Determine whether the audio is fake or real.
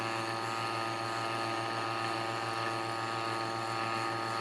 real